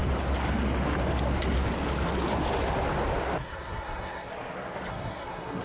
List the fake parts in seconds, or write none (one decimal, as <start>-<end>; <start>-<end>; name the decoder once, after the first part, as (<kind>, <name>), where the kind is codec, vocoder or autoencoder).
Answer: 3.4-4.3 (codec, SNAC); 4.9-5.6